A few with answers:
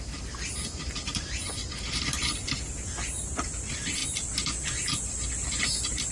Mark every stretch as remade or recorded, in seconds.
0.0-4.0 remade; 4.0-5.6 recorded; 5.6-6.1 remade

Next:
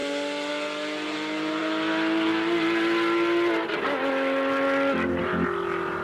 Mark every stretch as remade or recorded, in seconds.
0.0-6.0 recorded

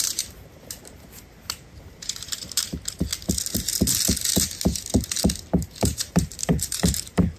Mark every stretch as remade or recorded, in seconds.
0.0-3.1 remade; 3.1-5.7 recorded; 5.7-7.4 remade

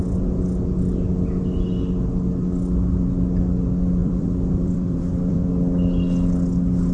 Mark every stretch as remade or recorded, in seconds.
0.0-4.0 recorded; 4.0-5.5 remade; 5.5-6.9 recorded

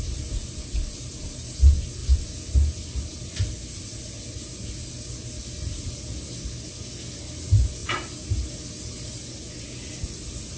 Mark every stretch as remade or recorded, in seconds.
0.0-10.6 recorded

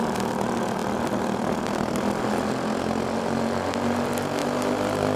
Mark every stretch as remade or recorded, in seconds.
0.0-4.4 recorded; 4.4-5.2 remade